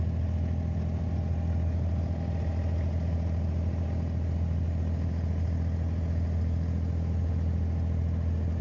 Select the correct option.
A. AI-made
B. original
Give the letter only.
B